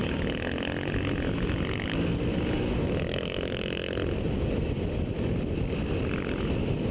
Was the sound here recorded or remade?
recorded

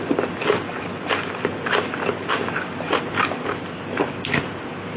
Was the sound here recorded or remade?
recorded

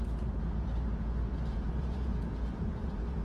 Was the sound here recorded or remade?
remade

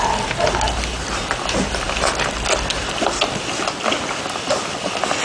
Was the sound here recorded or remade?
recorded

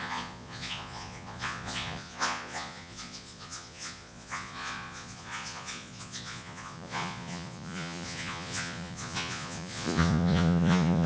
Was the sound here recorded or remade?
remade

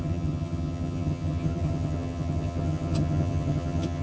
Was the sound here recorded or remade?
remade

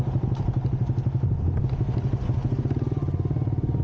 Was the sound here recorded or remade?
recorded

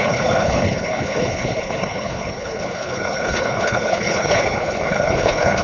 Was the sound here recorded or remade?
remade